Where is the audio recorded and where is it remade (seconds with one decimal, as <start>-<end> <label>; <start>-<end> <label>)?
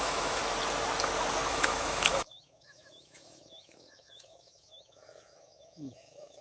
0.0-0.4 remade; 0.4-1.5 recorded; 1.5-6.4 remade